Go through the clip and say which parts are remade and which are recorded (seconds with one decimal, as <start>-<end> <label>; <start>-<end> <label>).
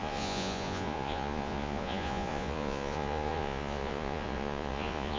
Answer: 0.0-5.2 remade